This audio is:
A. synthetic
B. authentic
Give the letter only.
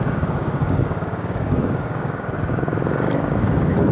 A